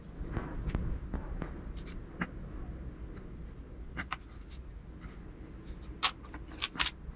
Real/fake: real